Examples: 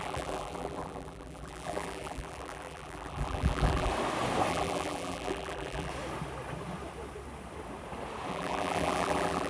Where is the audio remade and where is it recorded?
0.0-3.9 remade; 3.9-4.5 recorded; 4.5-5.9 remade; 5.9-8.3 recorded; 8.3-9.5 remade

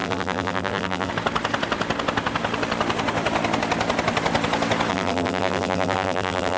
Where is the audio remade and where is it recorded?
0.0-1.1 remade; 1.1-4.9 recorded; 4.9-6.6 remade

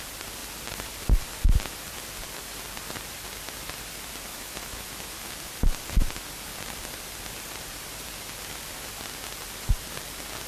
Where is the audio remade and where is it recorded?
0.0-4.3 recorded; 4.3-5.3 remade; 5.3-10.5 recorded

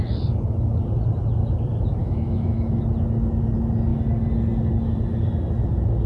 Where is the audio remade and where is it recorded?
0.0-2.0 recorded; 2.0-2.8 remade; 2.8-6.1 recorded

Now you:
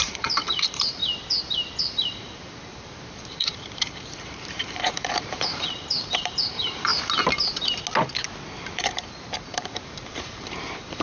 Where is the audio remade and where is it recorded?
0.0-1.0 remade; 1.0-1.8 recorded; 1.8-6.9 remade; 6.9-8.6 recorded; 8.6-11.0 remade

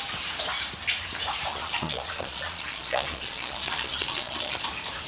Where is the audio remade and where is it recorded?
0.0-1.5 recorded; 1.5-4.6 remade; 4.6-5.1 recorded